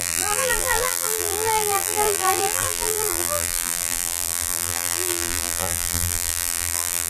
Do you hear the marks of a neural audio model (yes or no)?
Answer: yes